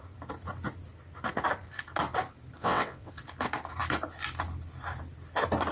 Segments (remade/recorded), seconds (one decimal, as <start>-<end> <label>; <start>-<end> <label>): 0.0-2.6 recorded; 2.6-3.1 remade; 3.1-5.7 recorded